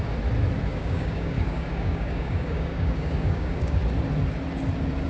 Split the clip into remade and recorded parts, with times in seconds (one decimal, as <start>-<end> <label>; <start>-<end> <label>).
0.0-0.7 recorded; 0.7-3.8 remade; 3.8-5.1 recorded